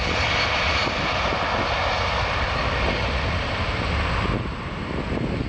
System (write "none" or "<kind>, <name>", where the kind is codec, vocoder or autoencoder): none